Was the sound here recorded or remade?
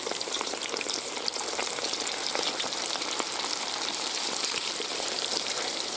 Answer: remade